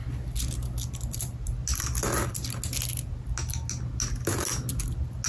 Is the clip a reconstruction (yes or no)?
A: no